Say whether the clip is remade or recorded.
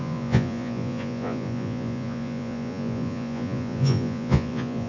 remade